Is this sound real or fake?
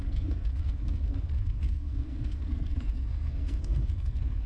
fake